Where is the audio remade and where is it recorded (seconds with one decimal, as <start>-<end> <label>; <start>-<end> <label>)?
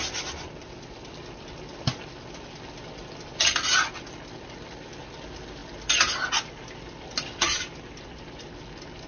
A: 0.0-9.1 recorded